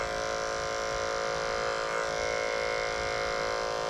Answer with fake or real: real